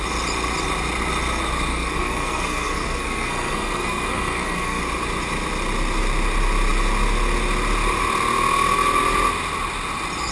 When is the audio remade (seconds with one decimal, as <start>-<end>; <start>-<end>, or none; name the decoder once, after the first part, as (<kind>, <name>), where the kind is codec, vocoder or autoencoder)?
1.7-4.8 (codec, SNAC)